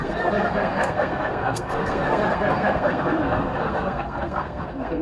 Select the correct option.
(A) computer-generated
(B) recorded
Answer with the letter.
A